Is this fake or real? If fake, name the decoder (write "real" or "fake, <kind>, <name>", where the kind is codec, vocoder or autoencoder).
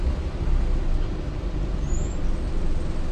real